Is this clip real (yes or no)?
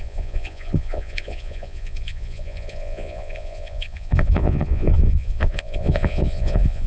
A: no